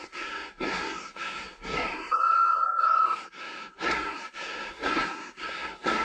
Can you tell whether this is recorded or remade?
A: remade